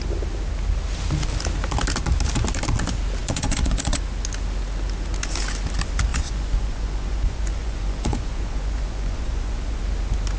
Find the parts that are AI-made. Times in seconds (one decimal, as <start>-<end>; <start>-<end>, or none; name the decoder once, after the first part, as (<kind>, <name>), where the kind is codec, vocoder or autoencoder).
3.2-4.0 (vocoder, Vocos); 6.1-9.8